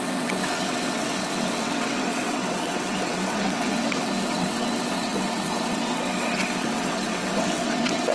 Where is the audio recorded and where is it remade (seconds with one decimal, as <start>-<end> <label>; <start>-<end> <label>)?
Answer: 0.0-8.1 remade